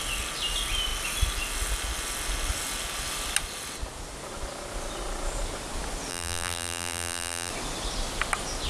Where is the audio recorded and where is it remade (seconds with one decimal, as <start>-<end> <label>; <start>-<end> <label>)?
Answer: 0.0-6.1 recorded; 6.1-7.5 remade; 7.5-8.7 recorded

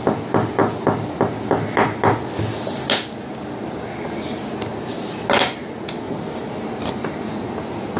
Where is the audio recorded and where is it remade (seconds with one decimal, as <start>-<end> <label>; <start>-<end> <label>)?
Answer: 0.0-8.0 recorded

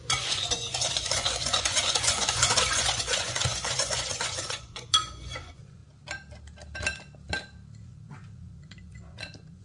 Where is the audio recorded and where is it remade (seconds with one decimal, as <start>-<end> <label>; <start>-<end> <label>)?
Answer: 0.0-5.8 remade; 5.8-7.8 recorded; 7.8-9.6 remade

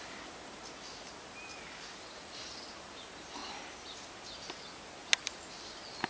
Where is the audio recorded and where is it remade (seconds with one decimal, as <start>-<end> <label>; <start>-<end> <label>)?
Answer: 0.0-6.1 recorded

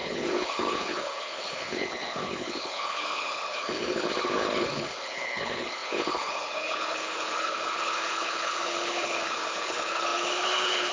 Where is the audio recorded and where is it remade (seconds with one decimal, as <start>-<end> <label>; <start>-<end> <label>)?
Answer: 0.0-10.9 remade

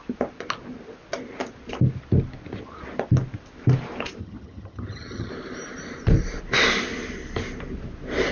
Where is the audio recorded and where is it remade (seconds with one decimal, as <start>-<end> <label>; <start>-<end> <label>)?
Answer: 0.0-4.2 recorded; 4.2-5.3 remade; 5.3-8.3 recorded